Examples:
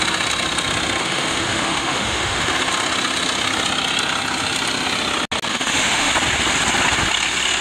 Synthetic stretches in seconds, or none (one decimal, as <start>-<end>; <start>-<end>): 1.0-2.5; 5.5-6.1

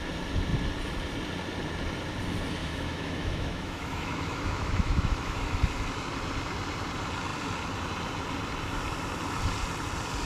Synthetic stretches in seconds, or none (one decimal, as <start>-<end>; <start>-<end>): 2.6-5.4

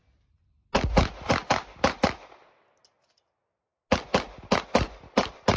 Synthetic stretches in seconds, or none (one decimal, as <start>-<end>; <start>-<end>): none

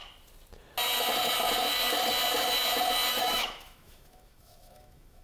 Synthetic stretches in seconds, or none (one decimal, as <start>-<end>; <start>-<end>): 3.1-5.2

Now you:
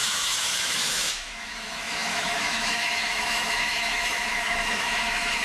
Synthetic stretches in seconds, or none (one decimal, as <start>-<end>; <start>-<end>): 0.0-5.4

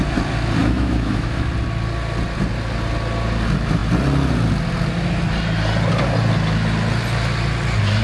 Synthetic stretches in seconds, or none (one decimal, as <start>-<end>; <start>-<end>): 0.6-1.5

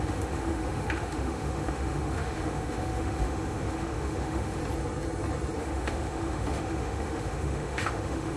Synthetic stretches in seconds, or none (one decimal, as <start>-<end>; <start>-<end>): 0.0-4.6; 5.6-8.4